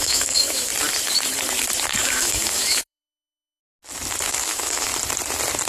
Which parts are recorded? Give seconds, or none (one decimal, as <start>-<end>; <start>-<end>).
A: 0.7-2.0; 3.6-4.3; 4.9-5.7